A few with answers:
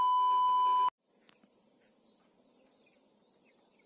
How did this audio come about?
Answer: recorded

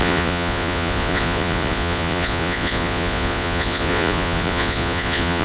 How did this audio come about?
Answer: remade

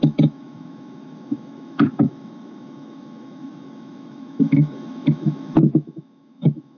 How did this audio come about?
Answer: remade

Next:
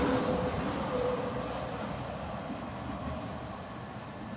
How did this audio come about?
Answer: recorded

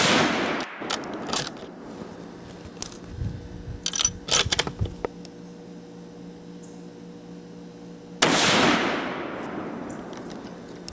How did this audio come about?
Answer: recorded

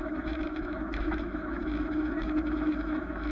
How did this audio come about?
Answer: remade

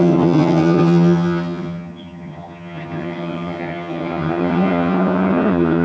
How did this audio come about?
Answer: remade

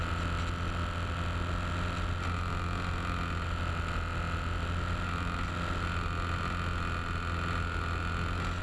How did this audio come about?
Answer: recorded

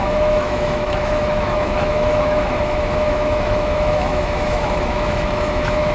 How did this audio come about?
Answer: remade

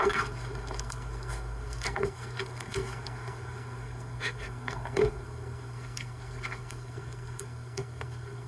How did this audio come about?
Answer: remade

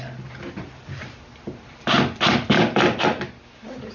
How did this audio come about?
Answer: recorded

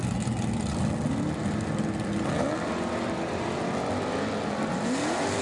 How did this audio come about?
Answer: recorded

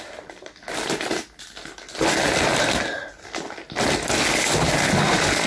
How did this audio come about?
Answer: recorded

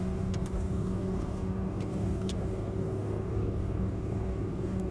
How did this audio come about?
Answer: remade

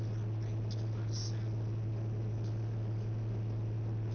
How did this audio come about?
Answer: recorded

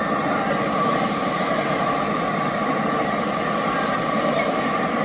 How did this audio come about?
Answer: remade